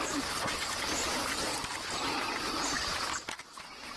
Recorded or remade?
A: recorded